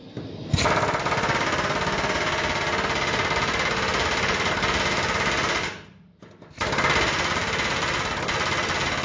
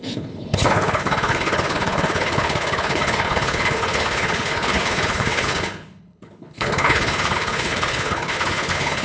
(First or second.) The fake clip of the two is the second